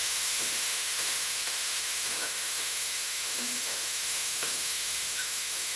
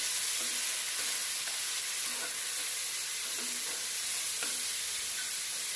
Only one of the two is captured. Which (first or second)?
second